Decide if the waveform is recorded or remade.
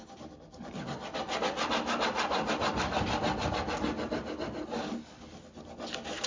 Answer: recorded